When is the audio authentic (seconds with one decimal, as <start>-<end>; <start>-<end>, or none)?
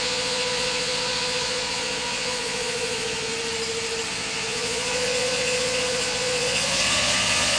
3.3-4.1